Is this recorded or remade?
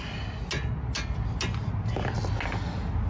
recorded